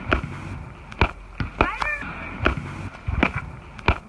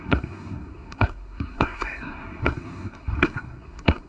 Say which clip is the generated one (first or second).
second